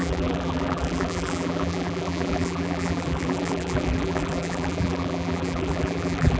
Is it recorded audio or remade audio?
remade